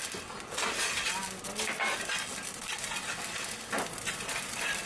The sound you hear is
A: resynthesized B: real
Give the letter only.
B